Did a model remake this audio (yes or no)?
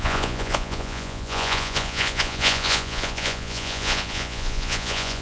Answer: yes